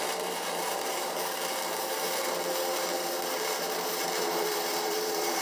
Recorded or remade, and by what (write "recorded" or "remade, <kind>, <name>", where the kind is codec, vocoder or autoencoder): remade, vocoder, BigVGAN v2